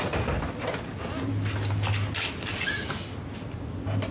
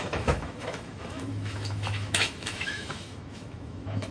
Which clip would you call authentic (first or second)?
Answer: first